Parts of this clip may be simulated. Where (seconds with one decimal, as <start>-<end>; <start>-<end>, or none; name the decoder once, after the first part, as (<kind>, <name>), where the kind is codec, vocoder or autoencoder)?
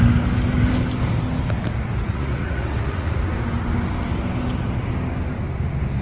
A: 2.1-3.2 (vocoder, Vocos)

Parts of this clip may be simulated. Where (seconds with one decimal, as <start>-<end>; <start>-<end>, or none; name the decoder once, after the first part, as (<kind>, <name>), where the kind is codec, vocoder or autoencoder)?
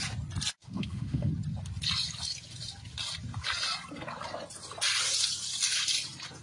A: 0.6-1.3 (autoencoder, DAC-VAE)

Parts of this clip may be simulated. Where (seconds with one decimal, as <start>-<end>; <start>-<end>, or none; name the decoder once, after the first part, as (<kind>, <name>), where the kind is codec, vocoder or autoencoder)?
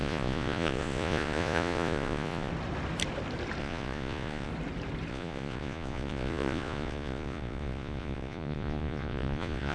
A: 0.0-2.5 (vocoder, Vocos); 3.6-4.5; 5.1-9.7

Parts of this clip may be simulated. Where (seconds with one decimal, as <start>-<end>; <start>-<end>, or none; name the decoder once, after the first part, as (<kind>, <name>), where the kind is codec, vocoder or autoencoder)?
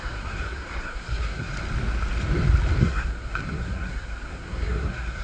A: 0.0-1.5 (codec, SNAC); 2.8-5.2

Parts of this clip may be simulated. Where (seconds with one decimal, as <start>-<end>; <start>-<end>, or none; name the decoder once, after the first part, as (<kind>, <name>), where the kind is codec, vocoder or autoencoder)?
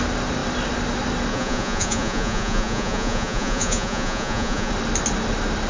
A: 1.3-4.7 (vocoder, Vocos)